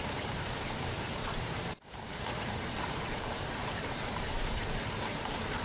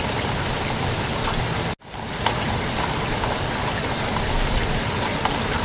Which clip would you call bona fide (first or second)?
second